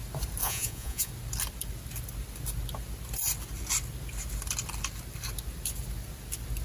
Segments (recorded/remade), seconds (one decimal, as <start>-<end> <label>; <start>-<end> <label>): 0.0-0.4 recorded; 0.4-1.1 remade; 1.1-6.6 recorded